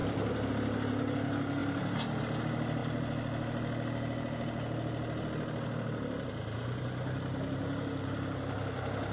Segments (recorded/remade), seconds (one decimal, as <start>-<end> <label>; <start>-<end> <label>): 0.0-0.5 remade; 0.5-1.6 recorded; 1.6-2.2 remade; 2.2-9.1 recorded